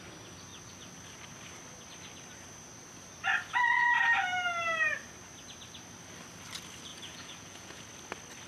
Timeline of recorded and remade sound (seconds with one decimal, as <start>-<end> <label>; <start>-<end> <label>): 0.0-6.9 recorded; 6.9-7.8 remade; 7.8-8.5 recorded